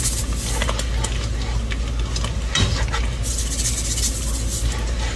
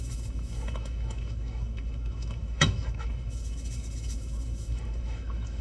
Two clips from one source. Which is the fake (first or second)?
second